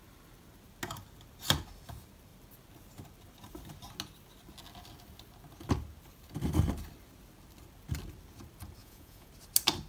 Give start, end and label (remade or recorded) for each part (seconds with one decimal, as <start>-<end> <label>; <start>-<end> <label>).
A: 0.0-8.8 recorded; 8.8-9.3 remade; 9.3-9.9 recorded